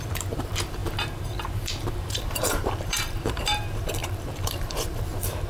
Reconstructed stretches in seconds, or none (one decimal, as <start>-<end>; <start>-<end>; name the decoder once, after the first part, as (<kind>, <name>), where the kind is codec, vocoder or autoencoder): 0.0-5.5 (vocoder, BigVGAN v2)